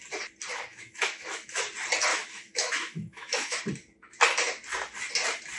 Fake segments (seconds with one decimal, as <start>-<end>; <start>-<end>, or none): 0.7-1.6; 2.1-3.6